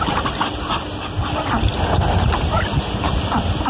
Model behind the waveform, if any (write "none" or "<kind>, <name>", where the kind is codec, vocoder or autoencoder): none